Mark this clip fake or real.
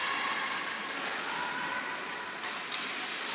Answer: real